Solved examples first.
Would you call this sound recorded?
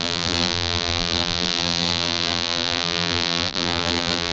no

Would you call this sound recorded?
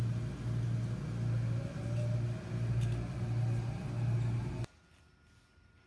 yes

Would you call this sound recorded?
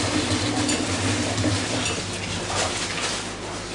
yes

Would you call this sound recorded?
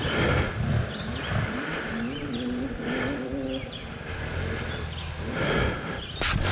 yes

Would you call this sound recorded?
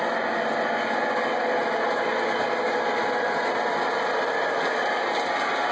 yes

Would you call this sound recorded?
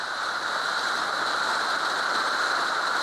no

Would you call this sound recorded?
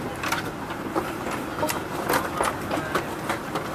yes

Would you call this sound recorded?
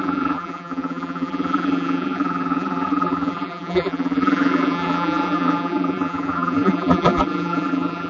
no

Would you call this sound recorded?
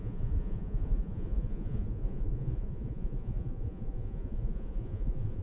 no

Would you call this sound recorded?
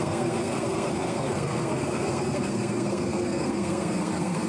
no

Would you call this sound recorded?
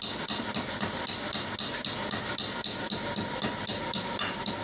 yes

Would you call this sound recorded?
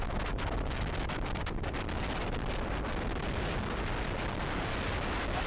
yes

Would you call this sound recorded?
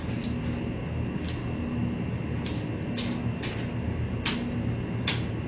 yes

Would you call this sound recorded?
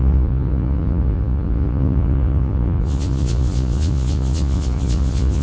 no